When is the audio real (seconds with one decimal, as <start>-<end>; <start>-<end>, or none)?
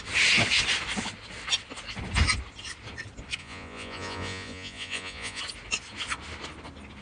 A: 0.0-3.4; 5.4-7.0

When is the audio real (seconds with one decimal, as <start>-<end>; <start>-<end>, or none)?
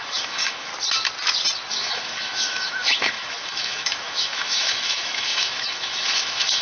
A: 0.7-1.7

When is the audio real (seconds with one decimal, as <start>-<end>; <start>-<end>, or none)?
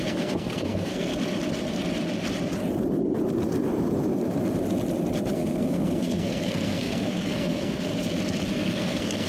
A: 1.1-5.3; 7.9-8.5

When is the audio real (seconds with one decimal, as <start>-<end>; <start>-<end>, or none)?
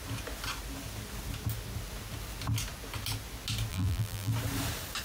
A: 0.0-3.7; 4.3-5.0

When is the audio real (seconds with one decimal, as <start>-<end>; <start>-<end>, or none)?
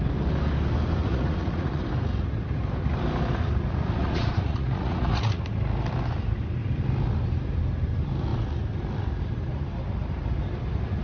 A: 0.0-1.0; 1.8-4.0; 5.4-11.0